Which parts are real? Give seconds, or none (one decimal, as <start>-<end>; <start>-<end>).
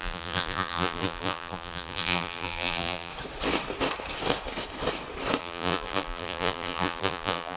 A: 3.1-5.4